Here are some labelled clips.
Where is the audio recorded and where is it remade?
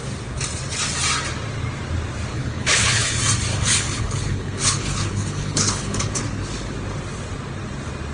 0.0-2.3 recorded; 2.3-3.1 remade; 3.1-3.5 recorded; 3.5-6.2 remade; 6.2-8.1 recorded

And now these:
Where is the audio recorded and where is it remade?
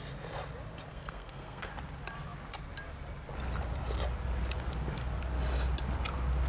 0.0-0.9 recorded; 0.9-1.7 remade; 1.7-6.5 recorded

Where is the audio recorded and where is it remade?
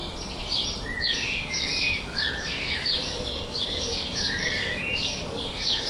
0.0-1.0 recorded; 1.0-5.9 remade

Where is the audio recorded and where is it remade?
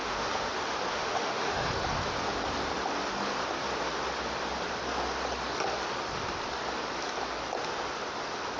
0.0-0.5 remade; 0.5-0.9 recorded; 0.9-1.7 remade; 1.7-8.6 recorded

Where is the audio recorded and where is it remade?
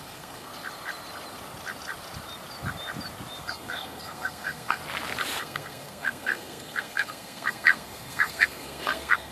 0.0-0.5 remade; 0.5-3.4 recorded; 3.4-4.8 remade; 4.8-5.4 recorded; 5.4-9.3 remade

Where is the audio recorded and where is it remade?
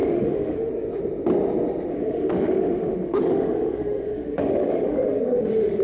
0.0-0.7 remade; 0.7-1.9 recorded; 1.9-5.8 remade